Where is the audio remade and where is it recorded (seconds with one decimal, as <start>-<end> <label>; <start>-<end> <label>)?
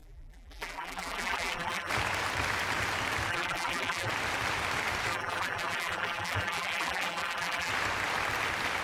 0.0-1.9 remade; 1.9-3.3 recorded; 3.3-4.1 remade; 4.1-5.1 recorded; 5.1-7.7 remade; 7.7-8.8 recorded